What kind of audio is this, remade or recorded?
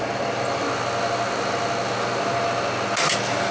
recorded